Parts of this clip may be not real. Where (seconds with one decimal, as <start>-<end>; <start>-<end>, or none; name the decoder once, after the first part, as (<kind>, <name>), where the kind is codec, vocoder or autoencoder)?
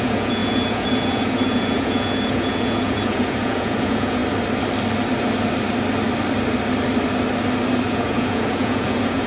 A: 0.0-4.2 (vocoder, Vocos); 7.9-9.3